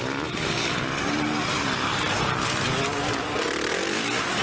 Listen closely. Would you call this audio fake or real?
real